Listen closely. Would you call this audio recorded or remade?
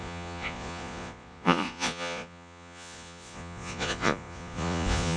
remade